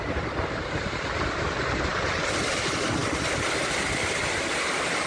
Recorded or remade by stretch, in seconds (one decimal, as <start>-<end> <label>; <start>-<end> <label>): 0.0-5.1 recorded